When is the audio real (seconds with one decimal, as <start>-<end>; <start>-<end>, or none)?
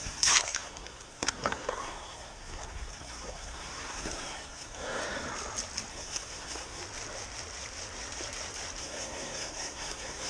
5.0-5.9; 6.8-8.8